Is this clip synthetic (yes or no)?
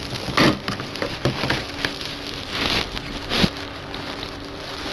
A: no